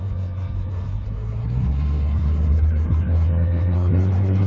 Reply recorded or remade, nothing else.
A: remade